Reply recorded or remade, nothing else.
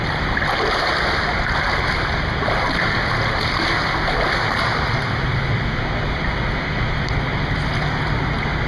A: recorded